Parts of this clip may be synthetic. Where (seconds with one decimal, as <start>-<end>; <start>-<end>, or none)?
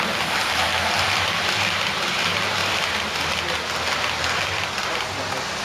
0.0-0.7; 1.5-2.6